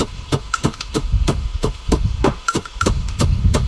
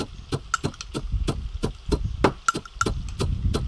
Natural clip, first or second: second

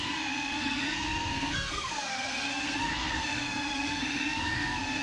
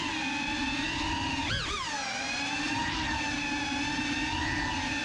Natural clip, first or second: second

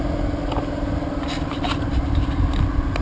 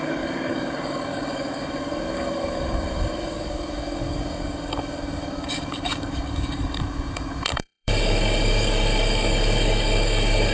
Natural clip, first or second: first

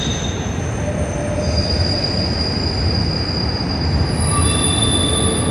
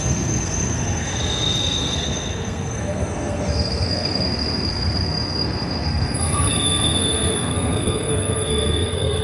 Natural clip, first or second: first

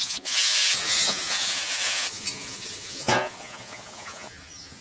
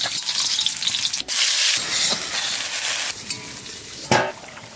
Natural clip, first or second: second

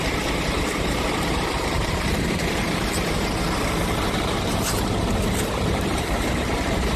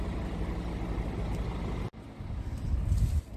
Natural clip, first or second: second